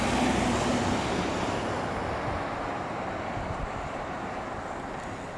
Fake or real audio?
real